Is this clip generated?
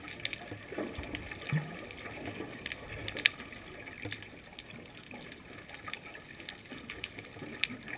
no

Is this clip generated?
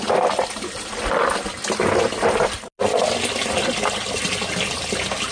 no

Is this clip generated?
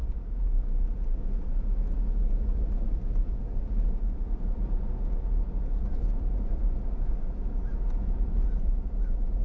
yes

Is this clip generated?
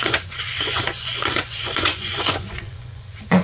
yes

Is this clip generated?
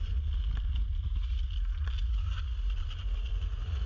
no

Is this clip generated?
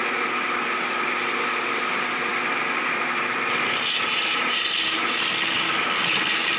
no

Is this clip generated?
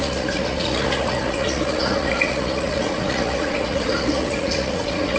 yes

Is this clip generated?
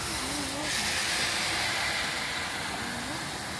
no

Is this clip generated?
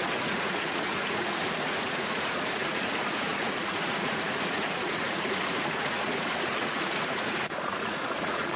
yes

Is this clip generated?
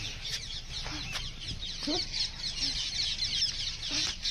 no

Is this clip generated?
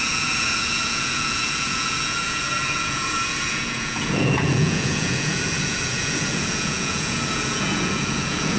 yes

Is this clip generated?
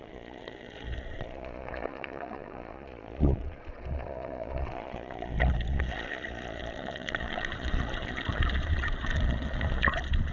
yes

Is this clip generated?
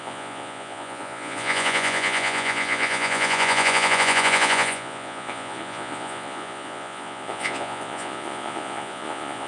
yes